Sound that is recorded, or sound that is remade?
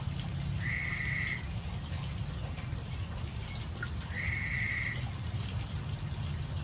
recorded